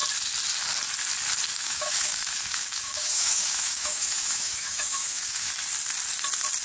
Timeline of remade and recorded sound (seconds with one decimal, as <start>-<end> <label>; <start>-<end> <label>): 0.0-1.5 recorded; 1.5-5.5 remade; 5.5-6.6 recorded